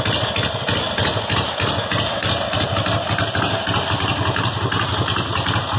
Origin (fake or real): real